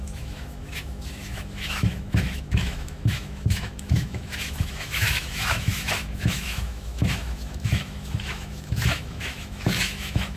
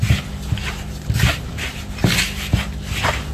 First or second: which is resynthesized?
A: first